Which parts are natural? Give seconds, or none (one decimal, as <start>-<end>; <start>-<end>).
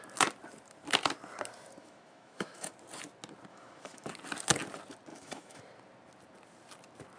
0.0-1.8; 2.7-3.5; 4.1-5.1; 5.6-7.2